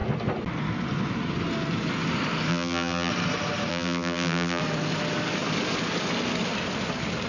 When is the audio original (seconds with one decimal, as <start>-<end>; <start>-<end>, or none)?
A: 0.0-2.5; 3.1-3.7; 4.6-7.3